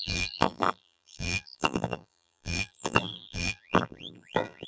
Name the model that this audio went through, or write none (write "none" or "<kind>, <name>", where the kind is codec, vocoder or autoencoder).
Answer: vocoder, BigVGAN v2